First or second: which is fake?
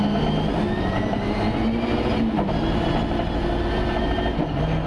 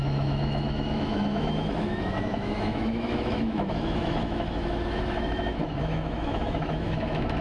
second